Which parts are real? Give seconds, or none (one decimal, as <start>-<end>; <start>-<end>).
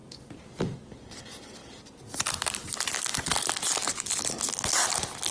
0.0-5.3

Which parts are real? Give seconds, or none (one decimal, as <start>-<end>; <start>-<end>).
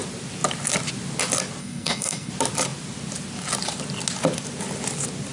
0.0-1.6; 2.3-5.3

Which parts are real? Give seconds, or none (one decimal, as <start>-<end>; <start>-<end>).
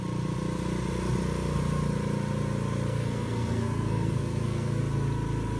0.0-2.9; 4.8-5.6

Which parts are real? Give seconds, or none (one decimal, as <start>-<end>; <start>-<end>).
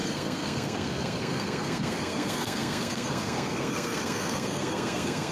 none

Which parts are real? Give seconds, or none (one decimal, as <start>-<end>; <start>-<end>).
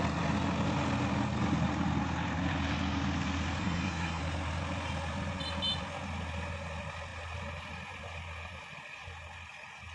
0.0-3.6; 4.2-9.9